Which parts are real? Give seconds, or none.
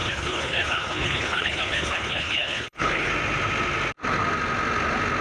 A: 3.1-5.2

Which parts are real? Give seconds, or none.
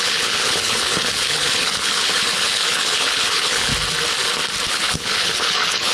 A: 3.7-4.7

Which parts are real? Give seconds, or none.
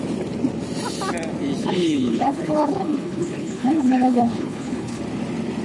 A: 0.0-1.6; 5.0-5.6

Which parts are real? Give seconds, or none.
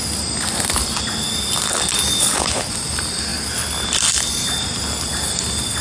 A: 0.0-2.2; 2.7-5.8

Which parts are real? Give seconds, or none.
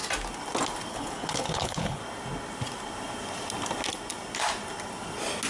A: 0.0-0.9; 2.0-5.5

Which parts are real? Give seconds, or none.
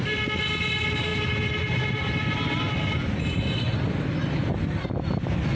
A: 0.0-5.6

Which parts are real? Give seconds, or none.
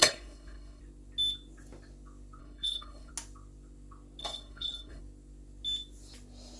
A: 0.8-2.4; 3.1-4.2; 5.0-6.6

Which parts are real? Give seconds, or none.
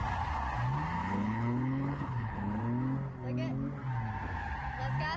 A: 0.0-1.0; 2.6-5.2